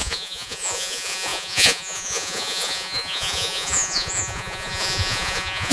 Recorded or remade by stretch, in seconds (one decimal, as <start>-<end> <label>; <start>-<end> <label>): 0.0-5.7 remade